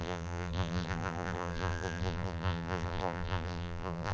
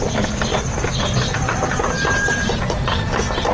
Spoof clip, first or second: first